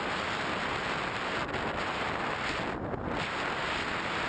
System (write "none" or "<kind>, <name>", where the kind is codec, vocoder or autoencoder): none